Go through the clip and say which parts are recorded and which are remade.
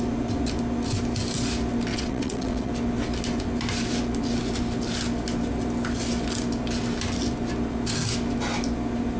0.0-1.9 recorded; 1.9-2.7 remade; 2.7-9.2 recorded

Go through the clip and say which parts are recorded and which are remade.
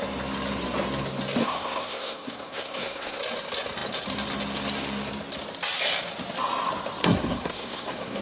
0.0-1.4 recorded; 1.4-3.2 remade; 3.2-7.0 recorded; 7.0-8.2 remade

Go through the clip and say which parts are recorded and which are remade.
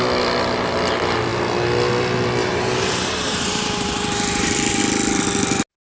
0.0-2.4 recorded; 2.4-4.8 remade; 4.8-5.8 recorded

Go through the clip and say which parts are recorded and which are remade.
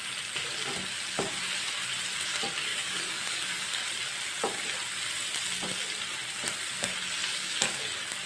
0.0-2.7 recorded; 2.7-3.8 remade; 3.8-7.3 recorded; 7.3-7.8 remade; 7.8-8.3 recorded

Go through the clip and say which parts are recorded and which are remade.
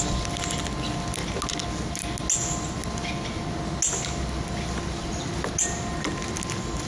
0.0-6.9 recorded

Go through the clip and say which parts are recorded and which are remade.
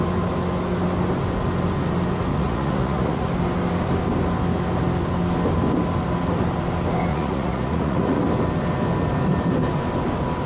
0.0-2.3 recorded; 2.3-3.3 remade; 3.3-7.1 recorded; 7.1-8.2 remade; 8.2-10.5 recorded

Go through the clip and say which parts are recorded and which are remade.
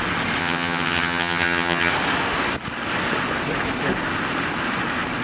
0.0-0.4 recorded; 0.4-1.9 remade; 1.9-5.2 recorded